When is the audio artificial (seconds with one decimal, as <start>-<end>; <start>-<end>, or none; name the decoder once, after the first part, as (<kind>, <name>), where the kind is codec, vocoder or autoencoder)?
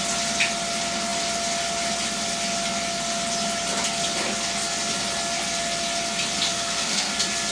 6.5-7.1 (codec, SNAC)